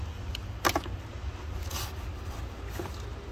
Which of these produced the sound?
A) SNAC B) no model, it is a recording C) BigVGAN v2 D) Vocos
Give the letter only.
B